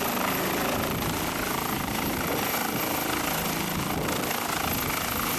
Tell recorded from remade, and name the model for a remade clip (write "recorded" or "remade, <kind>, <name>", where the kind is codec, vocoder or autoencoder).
recorded